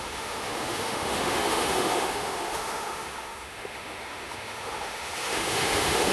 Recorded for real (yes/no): no